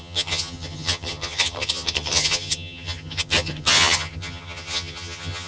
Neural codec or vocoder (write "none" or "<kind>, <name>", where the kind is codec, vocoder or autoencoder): vocoder, HiFi-GAN